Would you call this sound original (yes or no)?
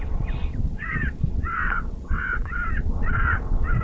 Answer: no